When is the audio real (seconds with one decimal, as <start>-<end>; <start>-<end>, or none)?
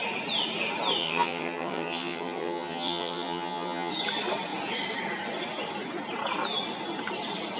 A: 0.0-1.0; 3.9-7.6